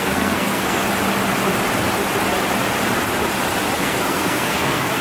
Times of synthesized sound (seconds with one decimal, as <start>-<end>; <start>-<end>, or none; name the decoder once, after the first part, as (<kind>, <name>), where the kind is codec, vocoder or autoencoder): 0.0-0.8 (codec, SNAC); 3.8-5.0